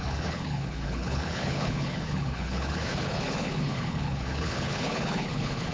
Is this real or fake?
fake